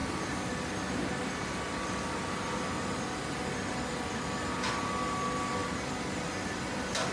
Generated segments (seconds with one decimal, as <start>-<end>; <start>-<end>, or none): none